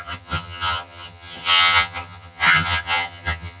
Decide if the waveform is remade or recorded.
remade